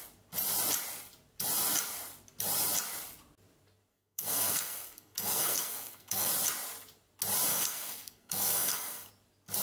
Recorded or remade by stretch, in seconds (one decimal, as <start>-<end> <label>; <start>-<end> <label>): 0.0-3.9 recorded; 3.9-6.3 remade; 6.3-7.5 recorded; 7.5-9.1 remade; 9.1-9.6 recorded